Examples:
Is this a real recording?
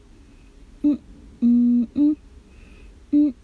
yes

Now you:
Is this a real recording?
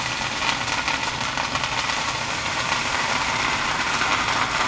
no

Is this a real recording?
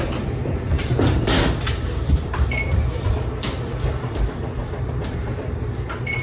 no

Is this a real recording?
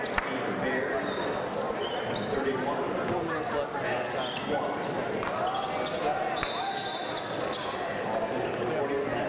yes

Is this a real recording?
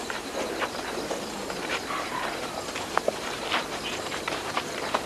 no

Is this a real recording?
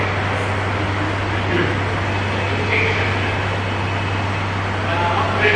yes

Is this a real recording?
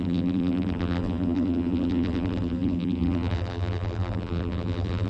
no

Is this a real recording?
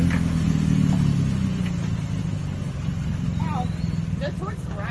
yes